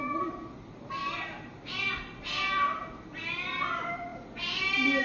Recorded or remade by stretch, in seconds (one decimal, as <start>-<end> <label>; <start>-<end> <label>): 0.0-5.0 recorded